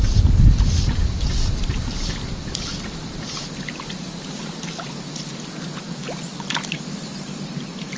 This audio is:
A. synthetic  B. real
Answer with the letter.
B